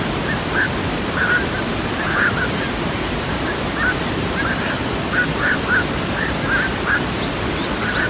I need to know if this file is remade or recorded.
recorded